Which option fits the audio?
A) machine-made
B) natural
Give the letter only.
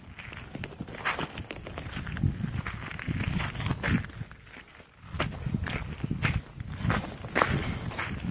B